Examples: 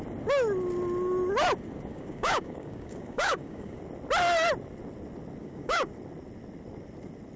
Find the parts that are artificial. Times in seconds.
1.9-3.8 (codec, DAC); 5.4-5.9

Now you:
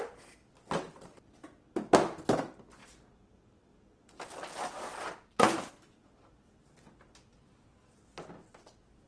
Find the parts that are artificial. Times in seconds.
none

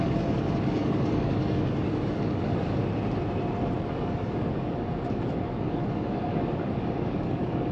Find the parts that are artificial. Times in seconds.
0.0-2.8 (codec, DAC); 3.8-7.7

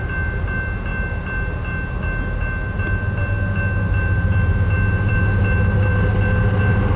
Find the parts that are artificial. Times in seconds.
none

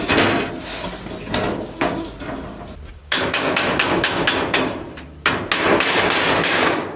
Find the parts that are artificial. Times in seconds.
1.5-2.0 (codec, DAC); 3.0-4.2; 6.4-7.0

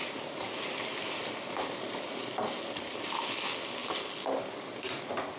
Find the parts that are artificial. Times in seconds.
none